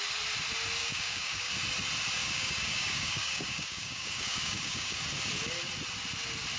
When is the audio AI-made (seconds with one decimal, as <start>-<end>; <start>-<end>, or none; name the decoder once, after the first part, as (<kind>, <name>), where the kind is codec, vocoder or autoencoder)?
0.8-1.5 (codec, DAC); 2.2-5.0